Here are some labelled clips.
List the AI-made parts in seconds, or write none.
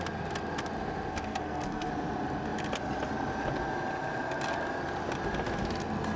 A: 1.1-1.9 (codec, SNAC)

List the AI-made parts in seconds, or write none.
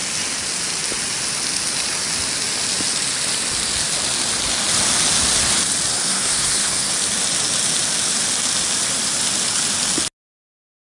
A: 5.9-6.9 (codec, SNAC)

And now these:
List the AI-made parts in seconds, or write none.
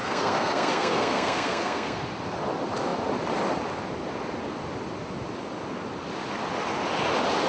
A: 0.0-2.0 (codec, SNAC)